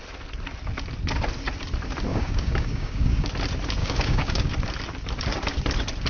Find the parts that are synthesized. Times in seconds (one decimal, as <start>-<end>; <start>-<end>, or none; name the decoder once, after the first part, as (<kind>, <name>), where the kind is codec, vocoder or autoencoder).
2.1-3.3 (codec, DAC); 3.8-4.5